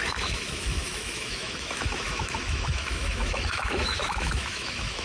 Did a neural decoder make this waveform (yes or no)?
yes